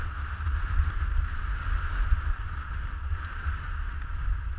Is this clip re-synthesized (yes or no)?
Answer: no